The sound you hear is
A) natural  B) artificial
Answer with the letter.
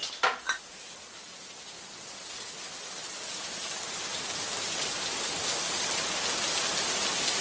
A